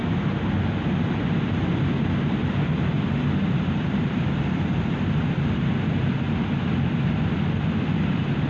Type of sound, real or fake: fake